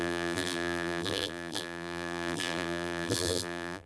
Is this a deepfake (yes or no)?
yes